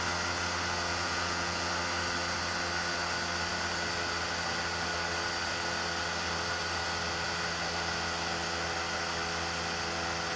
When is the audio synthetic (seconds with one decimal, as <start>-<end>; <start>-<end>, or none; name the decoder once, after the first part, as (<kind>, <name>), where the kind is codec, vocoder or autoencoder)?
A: 0.9-1.7 (vocoder, Vocos)